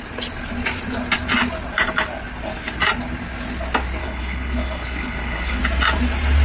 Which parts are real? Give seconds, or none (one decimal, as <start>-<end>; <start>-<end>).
0.0-4.0; 5.6-6.4